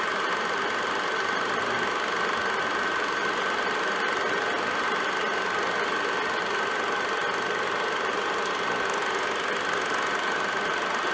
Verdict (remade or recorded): recorded